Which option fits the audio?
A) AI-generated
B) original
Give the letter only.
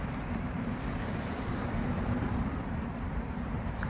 A